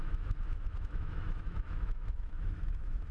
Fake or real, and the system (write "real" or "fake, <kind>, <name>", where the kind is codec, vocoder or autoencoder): fake, autoencoder, DAC-VAE